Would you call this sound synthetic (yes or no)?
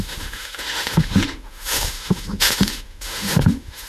yes